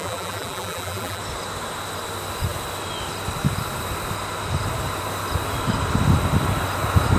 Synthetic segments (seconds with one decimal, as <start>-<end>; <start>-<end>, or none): 0.0-1.2